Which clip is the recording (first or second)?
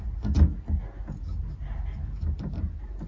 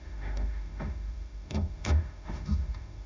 first